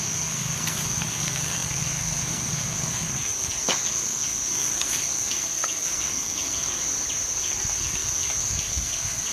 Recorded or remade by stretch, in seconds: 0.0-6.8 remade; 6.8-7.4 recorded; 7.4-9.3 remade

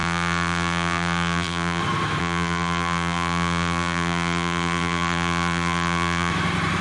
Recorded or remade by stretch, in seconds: 0.0-1.8 remade; 1.8-2.2 recorded; 2.2-6.3 remade; 6.3-6.8 recorded

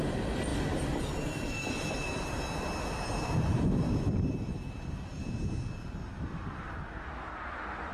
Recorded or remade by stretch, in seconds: 0.0-0.5 recorded; 0.5-5.2 remade; 5.2-7.9 recorded

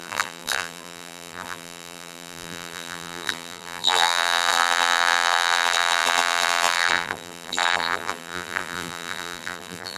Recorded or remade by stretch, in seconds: 0.0-10.0 remade

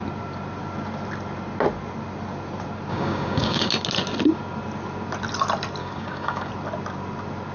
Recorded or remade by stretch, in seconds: 0.0-2.9 recorded; 2.9-3.7 remade; 3.7-5.8 recorded; 5.8-6.5 remade; 6.5-7.5 recorded

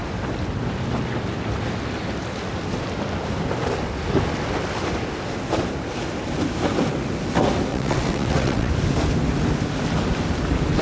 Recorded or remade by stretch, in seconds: 0.0-7.7 recorded; 7.7-8.7 remade; 8.7-10.8 recorded

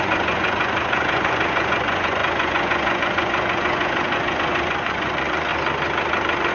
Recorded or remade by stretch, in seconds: 0.0-5.5 remade; 5.5-6.5 recorded

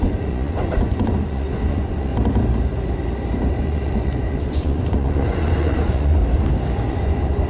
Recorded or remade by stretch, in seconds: 0.0-2.1 remade; 2.1-3.5 recorded; 3.5-6.2 remade; 6.2-6.9 recorded; 6.9-7.5 remade